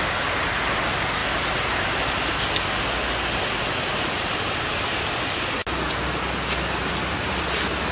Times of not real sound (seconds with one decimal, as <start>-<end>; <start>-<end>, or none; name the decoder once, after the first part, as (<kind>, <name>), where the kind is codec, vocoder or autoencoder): none